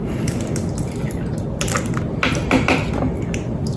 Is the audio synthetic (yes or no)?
no